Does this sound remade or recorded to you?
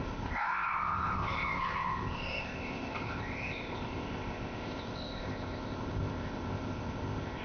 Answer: remade